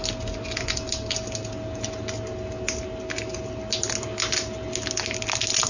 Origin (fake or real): real